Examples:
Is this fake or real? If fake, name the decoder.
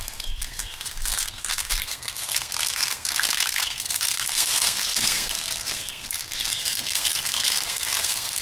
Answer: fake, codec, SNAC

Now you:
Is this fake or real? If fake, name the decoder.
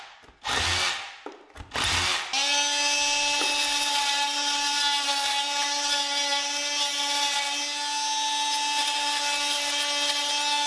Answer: real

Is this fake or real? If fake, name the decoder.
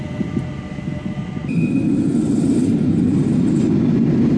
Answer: real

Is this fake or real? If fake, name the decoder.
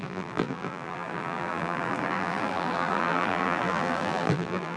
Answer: fake, vocoder, BigVGAN v2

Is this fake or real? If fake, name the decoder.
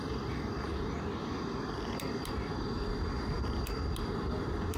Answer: real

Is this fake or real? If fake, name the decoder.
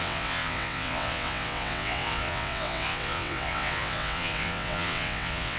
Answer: fake, vocoder, WaveNeXt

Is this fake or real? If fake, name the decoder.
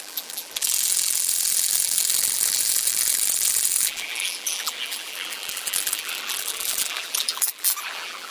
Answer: fake, vocoder, BigVGAN v2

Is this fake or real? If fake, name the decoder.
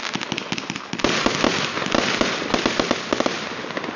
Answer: real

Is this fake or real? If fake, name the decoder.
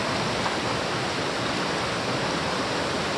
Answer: real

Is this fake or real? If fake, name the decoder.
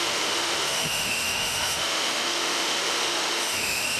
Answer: fake, autoencoder, DAC-VAE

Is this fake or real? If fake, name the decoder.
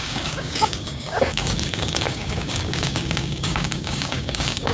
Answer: fake, codec, DAC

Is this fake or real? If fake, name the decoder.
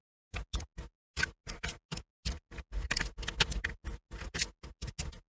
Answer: real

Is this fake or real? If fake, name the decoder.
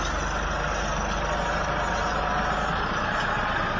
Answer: real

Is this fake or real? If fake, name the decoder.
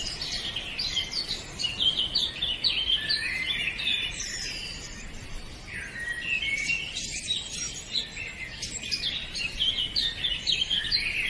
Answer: real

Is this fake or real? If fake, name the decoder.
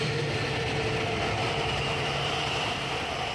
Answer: fake, vocoder, BigVGAN v2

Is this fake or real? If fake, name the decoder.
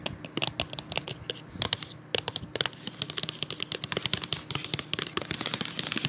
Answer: real